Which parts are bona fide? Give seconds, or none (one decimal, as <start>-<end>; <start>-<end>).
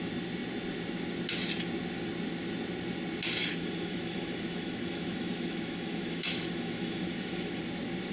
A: 0.0-3.4; 7.6-8.1